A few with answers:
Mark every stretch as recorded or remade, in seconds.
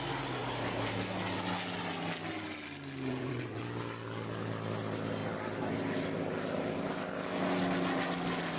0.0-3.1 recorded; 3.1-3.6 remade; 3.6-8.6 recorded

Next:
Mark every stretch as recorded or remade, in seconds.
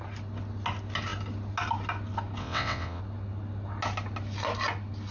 0.0-2.4 recorded; 2.4-3.0 remade; 3.0-5.1 recorded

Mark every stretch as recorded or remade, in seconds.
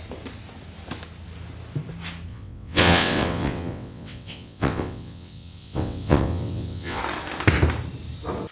0.0-2.3 recorded; 2.3-7.0 remade; 7.0-8.5 recorded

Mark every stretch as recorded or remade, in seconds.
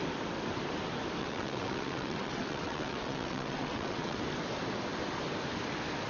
0.0-1.2 recorded; 1.2-4.2 remade; 4.2-6.1 recorded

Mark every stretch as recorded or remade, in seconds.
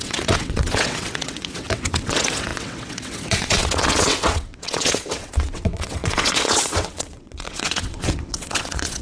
0.0-9.0 remade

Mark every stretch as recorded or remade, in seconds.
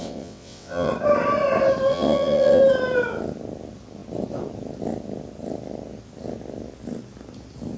0.0-0.9 remade; 0.9-1.9 recorded; 1.9-2.6 remade; 2.6-7.8 recorded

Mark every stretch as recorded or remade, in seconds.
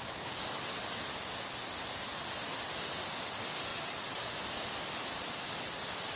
0.0-3.7 recorded; 3.7-4.2 remade; 4.2-6.2 recorded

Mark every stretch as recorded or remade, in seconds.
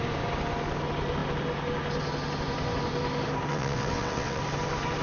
0.0-3.5 recorded; 3.5-4.4 remade; 4.4-5.0 recorded